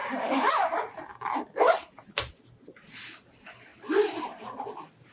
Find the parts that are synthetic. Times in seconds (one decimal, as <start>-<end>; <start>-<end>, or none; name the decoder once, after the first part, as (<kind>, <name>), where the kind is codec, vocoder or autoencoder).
none